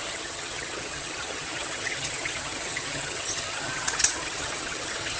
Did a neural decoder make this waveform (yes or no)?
yes